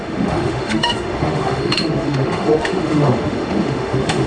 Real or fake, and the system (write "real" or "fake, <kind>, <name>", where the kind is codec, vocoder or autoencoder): fake, autoencoder, DAC-VAE